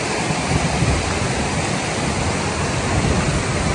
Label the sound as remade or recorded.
recorded